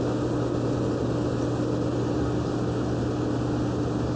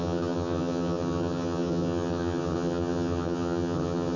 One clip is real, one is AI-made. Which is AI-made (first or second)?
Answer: second